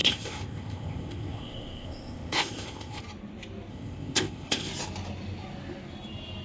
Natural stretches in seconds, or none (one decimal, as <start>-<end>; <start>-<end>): 3.0-3.7; 4.7-6.4